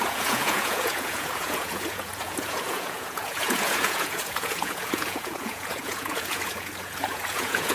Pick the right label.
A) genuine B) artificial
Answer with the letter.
B